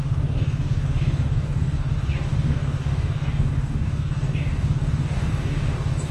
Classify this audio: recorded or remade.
remade